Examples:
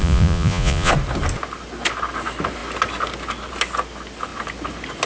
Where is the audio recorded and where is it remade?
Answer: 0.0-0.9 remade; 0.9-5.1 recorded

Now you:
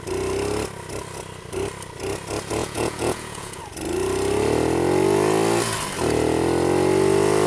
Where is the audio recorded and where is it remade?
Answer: 0.0-2.6 recorded; 2.6-3.6 remade; 3.6-7.5 recorded

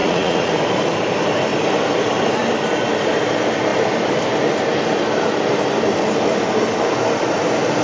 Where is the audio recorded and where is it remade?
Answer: 0.0-0.5 remade; 0.5-7.8 recorded

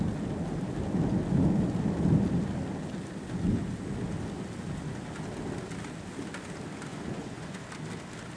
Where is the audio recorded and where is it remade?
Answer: 0.0-6.9 recorded; 6.9-7.6 remade; 7.6-8.4 recorded

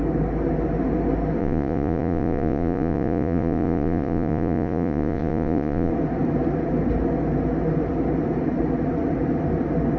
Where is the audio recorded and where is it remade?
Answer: 0.0-1.4 recorded; 1.4-5.9 remade; 5.9-10.0 recorded